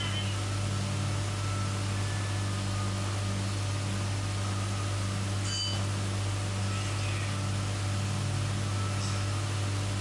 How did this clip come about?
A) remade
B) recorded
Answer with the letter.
B